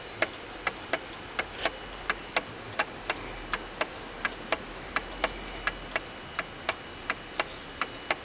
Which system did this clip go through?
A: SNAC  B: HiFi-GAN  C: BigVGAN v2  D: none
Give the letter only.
D